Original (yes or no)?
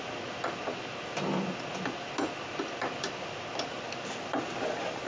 yes